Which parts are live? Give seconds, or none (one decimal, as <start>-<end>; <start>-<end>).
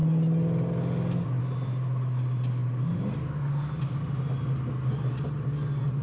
0.0-6.0